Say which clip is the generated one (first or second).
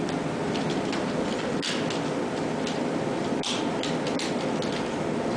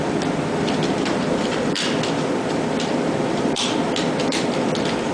second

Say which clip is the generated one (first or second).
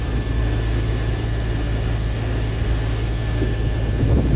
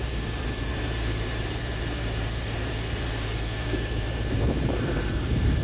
second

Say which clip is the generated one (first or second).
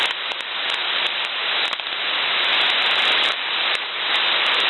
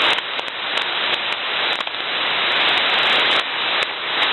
first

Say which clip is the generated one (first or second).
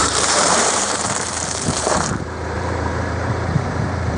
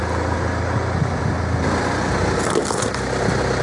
first